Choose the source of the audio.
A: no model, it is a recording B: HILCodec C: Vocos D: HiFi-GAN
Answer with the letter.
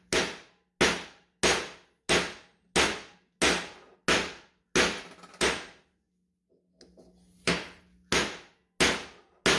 A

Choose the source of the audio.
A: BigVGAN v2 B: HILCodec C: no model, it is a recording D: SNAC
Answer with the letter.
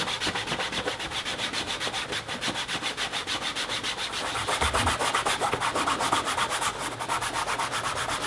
C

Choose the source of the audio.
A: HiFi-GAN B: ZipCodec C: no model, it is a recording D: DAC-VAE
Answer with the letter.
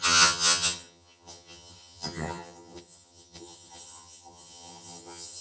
A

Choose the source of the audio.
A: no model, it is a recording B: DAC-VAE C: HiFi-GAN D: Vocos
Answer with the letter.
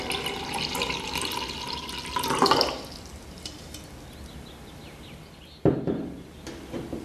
A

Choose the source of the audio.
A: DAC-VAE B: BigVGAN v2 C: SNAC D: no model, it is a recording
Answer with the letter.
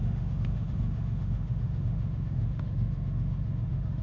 A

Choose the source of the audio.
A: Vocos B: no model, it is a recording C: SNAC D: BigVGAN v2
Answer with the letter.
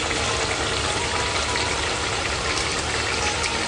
B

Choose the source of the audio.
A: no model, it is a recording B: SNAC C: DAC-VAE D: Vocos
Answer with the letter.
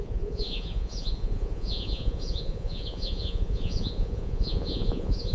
D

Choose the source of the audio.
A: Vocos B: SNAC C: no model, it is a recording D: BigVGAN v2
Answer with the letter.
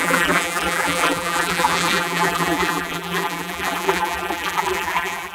D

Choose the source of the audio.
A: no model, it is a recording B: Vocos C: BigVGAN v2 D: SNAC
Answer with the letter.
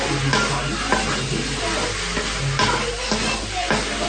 A